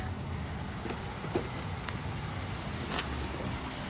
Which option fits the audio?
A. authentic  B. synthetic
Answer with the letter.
A